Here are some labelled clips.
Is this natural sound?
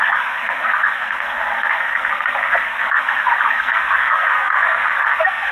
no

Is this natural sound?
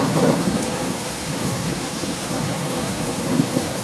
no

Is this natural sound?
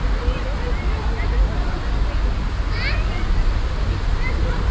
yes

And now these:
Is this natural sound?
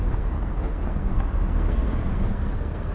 no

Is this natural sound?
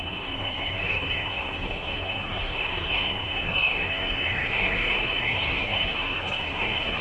no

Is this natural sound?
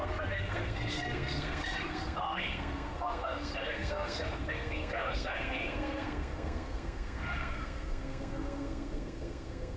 no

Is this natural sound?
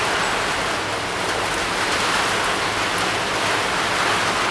yes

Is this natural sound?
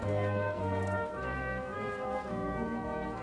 no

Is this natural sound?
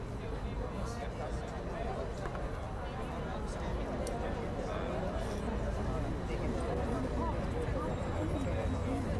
yes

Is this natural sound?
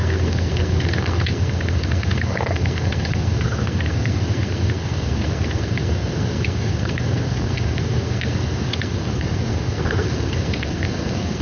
no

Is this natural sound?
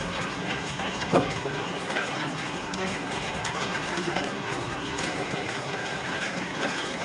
no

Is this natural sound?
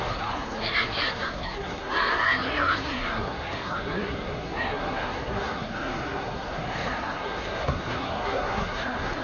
no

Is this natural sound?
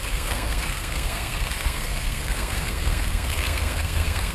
no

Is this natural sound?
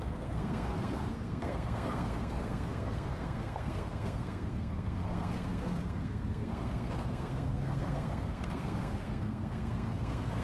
no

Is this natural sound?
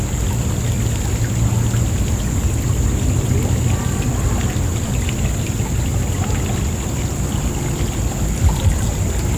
yes